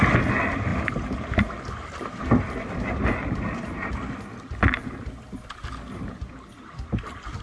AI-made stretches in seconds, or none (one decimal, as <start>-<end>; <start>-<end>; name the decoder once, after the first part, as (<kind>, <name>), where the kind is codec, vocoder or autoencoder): none